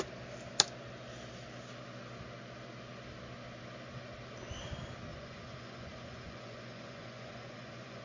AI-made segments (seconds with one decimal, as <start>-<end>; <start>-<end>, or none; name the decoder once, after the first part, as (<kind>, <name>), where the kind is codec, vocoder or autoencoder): 5.1-8.0 (vocoder, Vocos)